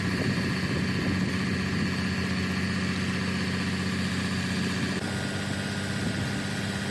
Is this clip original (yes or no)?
yes